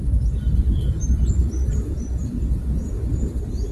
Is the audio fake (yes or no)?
no